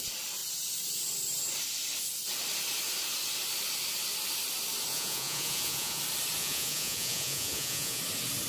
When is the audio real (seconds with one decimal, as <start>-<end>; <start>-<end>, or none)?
0.0-4.9; 6.0-6.4; 8.0-8.5